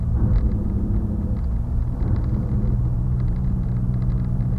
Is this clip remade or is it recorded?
remade